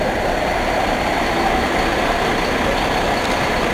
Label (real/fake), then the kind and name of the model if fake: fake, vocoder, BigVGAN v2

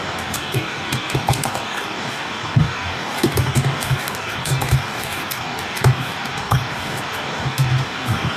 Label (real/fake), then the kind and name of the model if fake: fake, codec, DAC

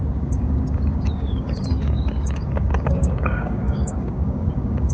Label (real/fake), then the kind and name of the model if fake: fake, codec, DAC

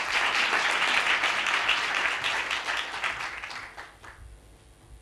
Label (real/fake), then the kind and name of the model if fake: real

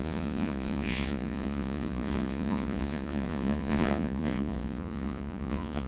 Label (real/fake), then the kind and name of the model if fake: fake, vocoder, Vocos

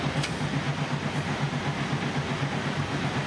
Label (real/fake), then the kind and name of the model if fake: real